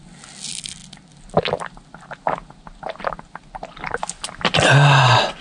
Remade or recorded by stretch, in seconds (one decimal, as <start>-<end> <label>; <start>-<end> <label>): 0.0-5.4 recorded